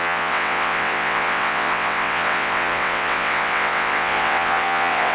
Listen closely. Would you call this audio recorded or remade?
remade